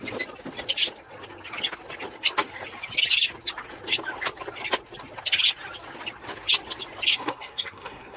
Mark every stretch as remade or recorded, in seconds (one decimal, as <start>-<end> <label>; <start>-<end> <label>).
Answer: 0.0-7.1 recorded; 7.1-8.2 remade

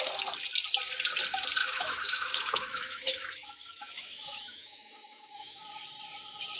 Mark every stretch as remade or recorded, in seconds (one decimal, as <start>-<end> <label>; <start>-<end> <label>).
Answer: 0.0-1.6 recorded; 1.6-5.6 remade; 5.6-6.6 recorded

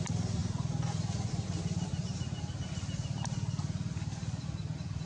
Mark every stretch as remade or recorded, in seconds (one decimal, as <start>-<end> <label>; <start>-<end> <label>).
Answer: 0.0-5.1 recorded

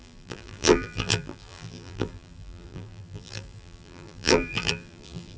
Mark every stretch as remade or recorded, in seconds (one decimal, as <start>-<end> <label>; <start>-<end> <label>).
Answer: 0.0-5.4 remade

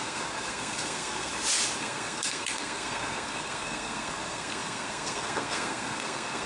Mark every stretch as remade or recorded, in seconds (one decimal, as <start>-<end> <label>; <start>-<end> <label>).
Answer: 0.0-1.3 remade; 1.3-1.8 recorded; 1.8-6.5 remade

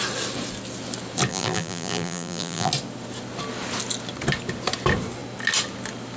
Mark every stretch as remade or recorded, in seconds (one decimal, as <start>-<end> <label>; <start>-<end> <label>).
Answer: 0.0-1.3 recorded; 1.3-2.7 remade; 2.7-6.2 recorded

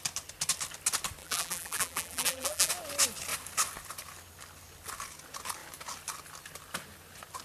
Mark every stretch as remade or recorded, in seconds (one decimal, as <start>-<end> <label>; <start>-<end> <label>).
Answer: 0.0-1.2 recorded; 1.2-2.7 remade; 2.7-7.4 recorded